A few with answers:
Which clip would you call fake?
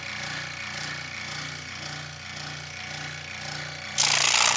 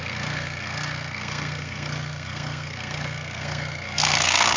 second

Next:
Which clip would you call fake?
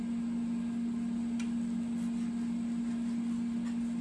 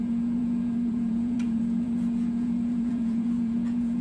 second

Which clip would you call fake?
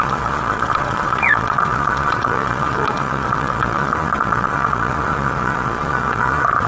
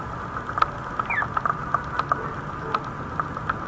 first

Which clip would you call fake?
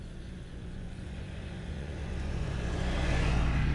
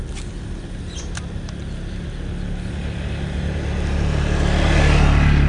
first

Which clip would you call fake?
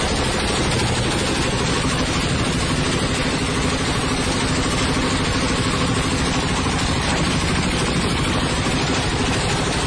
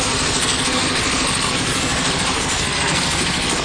second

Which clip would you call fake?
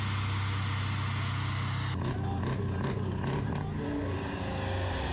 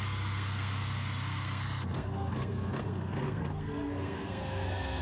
second